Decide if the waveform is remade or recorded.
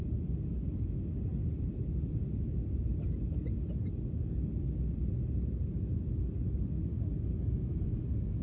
recorded